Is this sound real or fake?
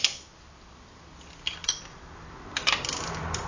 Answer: fake